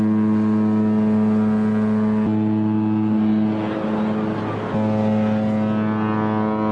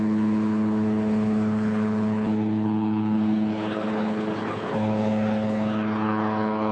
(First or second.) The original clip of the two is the first